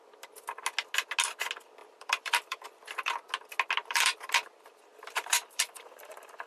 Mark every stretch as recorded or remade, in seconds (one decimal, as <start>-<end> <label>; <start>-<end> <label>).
0.0-1.8 recorded; 1.8-3.1 remade; 3.1-3.8 recorded; 3.8-6.5 remade